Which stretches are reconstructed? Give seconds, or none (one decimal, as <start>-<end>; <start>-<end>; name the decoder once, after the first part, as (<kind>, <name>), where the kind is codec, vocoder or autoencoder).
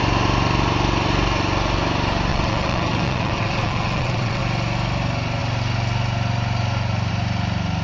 2.3-4.4 (vocoder, WaveNeXt)